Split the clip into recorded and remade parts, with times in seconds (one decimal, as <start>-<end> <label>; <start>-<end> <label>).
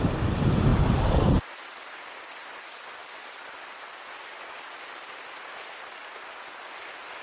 0.0-7.2 recorded